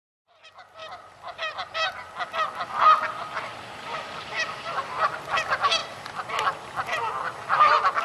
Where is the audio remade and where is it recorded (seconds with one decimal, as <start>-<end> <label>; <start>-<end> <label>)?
0.0-0.8 recorded; 0.8-1.4 remade; 1.4-3.5 recorded; 3.5-5.3 remade; 5.3-8.0 recorded